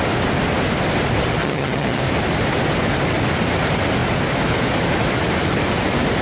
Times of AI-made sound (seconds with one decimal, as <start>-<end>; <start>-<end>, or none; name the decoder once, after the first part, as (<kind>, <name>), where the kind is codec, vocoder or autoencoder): 1.4-2.0 (vocoder, HiFi-GAN)